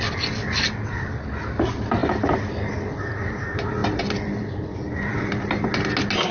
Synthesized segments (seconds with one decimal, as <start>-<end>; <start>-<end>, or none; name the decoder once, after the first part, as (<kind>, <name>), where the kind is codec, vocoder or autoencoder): none